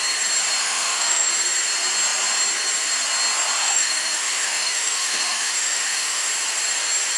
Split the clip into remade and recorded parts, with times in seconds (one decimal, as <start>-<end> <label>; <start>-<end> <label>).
0.0-0.6 recorded; 0.6-1.3 remade; 1.3-3.6 recorded; 3.6-6.3 remade; 6.3-7.2 recorded